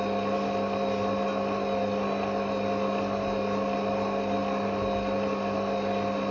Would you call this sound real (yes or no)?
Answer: yes